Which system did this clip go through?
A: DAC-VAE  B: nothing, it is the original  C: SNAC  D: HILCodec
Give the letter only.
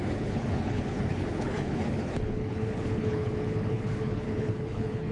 D